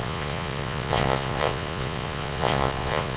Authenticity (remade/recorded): remade